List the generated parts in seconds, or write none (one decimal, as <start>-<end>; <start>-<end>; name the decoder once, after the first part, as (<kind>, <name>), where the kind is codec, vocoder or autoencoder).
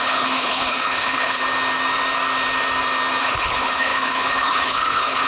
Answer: 0.0-1.4 (codec, HILCodec); 3.2-5.3